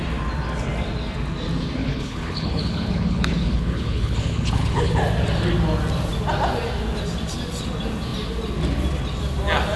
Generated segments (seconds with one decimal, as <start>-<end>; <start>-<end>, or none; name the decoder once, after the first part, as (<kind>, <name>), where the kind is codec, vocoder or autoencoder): 1.8-5.0 (codec, HILCodec)